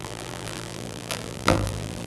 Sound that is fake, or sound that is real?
fake